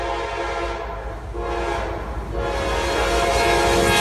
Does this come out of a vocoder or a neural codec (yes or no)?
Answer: no